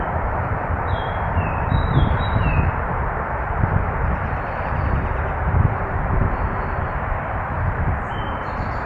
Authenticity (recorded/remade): remade